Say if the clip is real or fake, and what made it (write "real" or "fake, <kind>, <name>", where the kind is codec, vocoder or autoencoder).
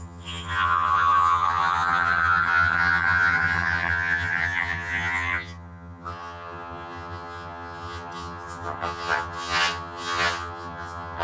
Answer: fake, vocoder, HiFi-GAN